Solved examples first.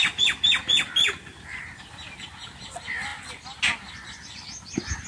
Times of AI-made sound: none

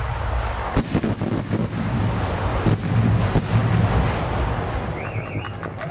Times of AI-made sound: none

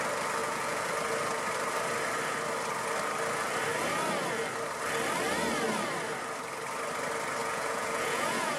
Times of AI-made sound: 0.4-0.9 (vocoder, Vocos); 7.4-8.6

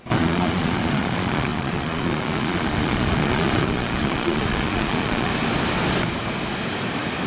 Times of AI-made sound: 0.0-5.3 (vocoder, Vocos)